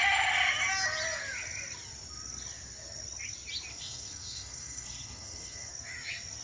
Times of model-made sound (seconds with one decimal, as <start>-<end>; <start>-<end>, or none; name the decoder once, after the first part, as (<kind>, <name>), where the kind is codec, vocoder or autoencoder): 3.7-5.7 (codec, SNAC)